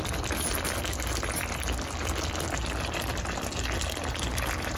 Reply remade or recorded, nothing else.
recorded